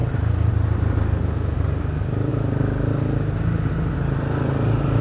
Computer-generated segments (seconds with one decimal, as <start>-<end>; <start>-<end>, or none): none